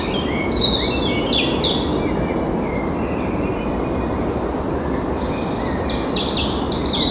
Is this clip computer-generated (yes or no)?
no